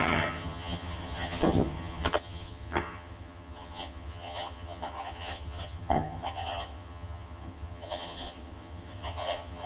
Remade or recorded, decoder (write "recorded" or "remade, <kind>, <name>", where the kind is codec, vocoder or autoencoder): remade, vocoder, HiFi-GAN